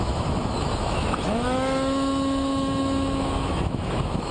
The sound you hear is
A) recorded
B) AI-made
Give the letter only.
B